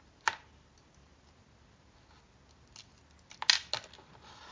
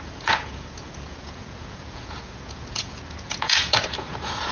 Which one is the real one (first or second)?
first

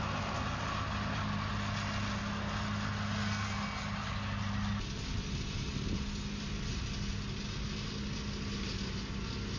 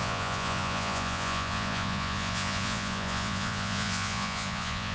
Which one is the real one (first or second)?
first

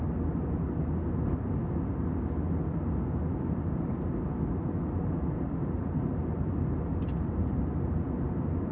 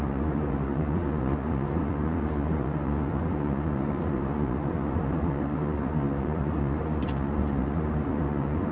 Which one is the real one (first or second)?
first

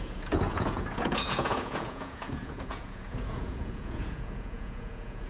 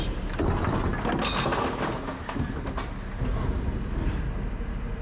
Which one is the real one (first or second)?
second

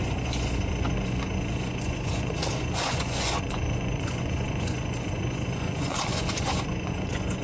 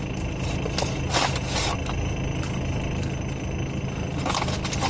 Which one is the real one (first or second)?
second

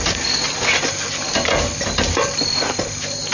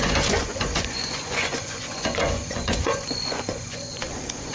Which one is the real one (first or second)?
first